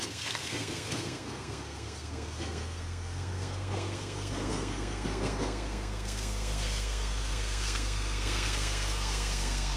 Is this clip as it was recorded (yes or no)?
no